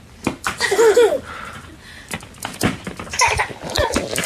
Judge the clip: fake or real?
real